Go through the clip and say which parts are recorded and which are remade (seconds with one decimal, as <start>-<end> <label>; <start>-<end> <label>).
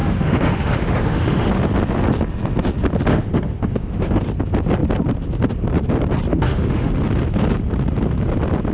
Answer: 0.0-1.5 remade; 1.5-3.1 recorded; 3.1-4.2 remade; 4.2-6.3 recorded; 6.3-6.9 remade; 6.9-8.7 recorded